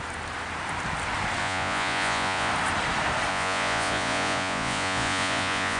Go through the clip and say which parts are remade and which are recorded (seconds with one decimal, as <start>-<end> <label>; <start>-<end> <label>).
0.0-1.4 recorded; 1.4-2.5 remade; 2.5-3.3 recorded; 3.3-5.8 remade